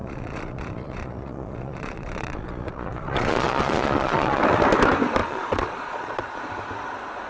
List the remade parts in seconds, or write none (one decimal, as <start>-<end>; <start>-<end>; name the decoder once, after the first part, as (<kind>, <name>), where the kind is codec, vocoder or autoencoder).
0.0-4.4 (vocoder, Vocos); 5.2-6.4